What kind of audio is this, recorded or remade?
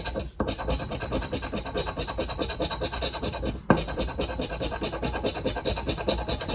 recorded